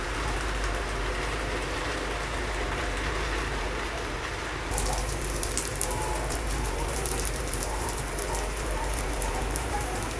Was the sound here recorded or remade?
remade